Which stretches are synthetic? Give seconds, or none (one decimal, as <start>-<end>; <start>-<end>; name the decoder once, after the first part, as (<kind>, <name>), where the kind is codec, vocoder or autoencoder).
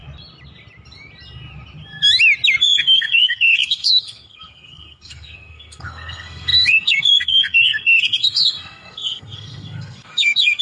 2.6-10.6 (codec, SNAC)